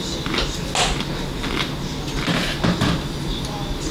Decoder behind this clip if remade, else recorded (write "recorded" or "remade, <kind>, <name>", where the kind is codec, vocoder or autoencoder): recorded